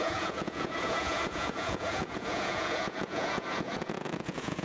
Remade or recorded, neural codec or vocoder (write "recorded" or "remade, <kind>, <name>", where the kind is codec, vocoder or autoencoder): remade, vocoder, Vocos